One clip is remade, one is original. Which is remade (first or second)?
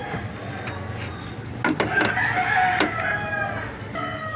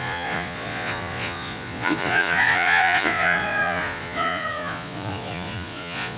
second